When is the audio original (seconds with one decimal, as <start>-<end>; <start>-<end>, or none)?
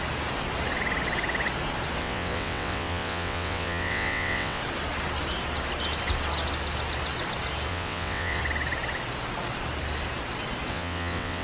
0.0-2.0; 4.6-7.7; 8.4-10.7